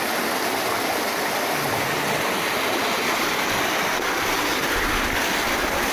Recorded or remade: recorded